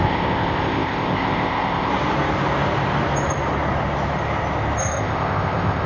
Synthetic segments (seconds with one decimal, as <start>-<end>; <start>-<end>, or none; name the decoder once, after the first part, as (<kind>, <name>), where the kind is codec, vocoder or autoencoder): 0.0-1.9 (codec, ZipCodec); 4.8-5.9